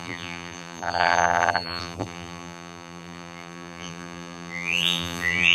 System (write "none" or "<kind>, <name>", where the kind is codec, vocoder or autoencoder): vocoder, BigVGAN v2